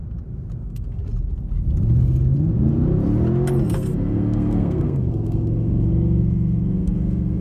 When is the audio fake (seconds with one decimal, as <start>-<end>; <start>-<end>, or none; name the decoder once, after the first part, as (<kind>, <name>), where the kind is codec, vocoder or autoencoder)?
0.6-1.0 (codec, SNAC); 3.6-7.4